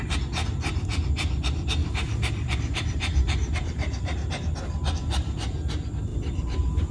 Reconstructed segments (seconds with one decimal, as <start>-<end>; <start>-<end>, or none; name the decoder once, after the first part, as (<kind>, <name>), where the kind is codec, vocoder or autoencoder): 1.8-4.3 (vocoder, BigVGAN v2); 6.1-6.9